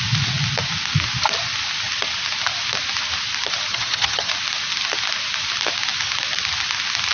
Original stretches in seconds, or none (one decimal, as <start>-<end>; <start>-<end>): 0.0-3.7; 4.3-7.1